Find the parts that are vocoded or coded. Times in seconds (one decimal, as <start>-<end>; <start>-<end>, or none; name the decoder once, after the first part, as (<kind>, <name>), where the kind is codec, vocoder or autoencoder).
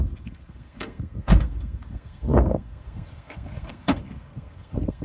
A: 0.0-5.0 (codec, SNAC)